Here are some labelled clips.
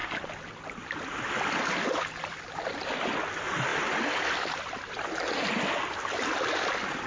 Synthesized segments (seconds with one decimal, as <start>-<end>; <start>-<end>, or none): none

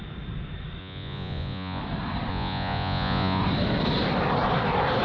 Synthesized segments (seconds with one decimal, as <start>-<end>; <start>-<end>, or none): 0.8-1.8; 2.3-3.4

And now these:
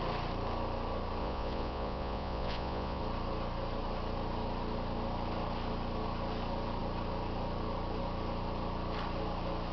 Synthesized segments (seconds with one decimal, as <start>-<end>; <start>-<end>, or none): 1.2-3.0

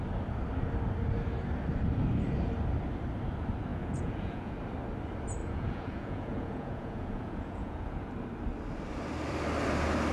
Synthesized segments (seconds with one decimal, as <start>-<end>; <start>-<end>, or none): 3.7-4.5; 5.4-8.1

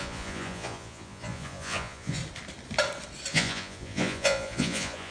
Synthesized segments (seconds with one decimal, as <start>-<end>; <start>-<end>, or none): 0.0-2.2; 3.3-5.1

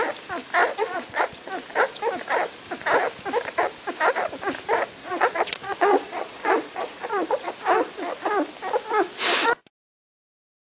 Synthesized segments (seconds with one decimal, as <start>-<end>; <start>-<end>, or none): 0.6-1.5; 5.0-7.5

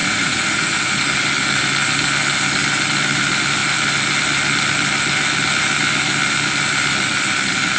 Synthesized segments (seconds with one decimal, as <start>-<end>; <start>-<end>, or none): 0.0-1.0